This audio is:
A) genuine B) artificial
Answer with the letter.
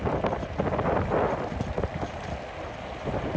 A